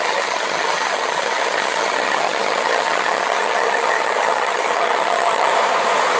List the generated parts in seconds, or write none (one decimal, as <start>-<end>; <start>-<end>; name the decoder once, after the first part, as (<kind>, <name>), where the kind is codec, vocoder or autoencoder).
0.0-5.5 (vocoder, HiFi-GAN)